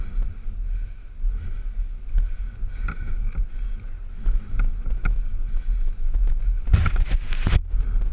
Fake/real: real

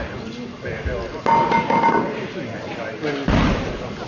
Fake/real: real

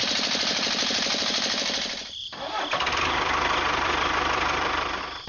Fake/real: fake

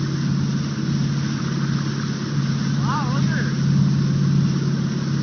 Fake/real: real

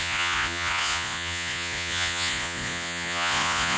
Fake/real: fake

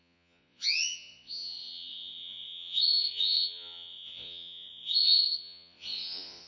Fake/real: fake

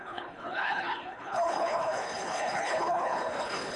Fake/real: fake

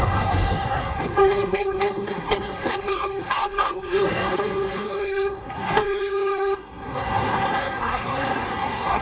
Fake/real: fake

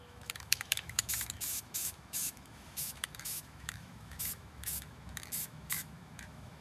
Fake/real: fake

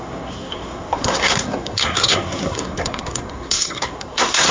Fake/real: fake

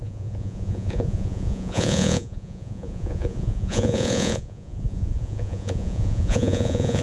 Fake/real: fake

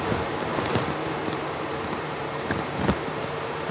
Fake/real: fake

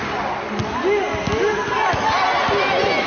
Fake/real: real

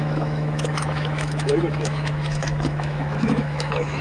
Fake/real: fake